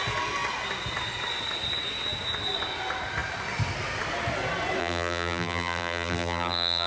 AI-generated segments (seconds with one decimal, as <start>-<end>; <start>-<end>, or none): 4.8-6.9